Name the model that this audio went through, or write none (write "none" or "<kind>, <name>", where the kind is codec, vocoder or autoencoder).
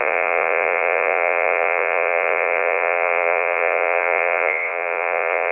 vocoder, Vocos